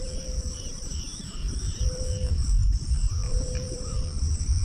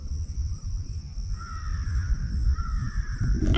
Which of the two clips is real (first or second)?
second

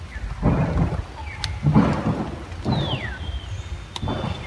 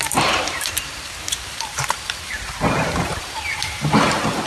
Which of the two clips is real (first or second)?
first